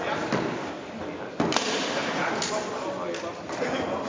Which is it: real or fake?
real